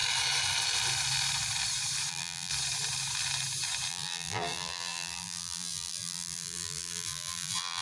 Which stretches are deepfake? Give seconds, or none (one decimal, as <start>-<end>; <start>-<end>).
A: 2.1-2.5; 3.9-7.8